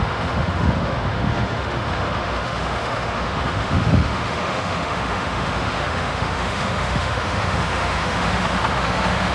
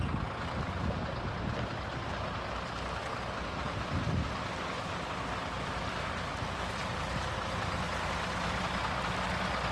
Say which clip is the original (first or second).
second